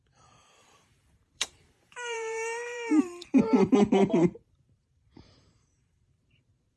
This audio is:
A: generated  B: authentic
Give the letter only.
A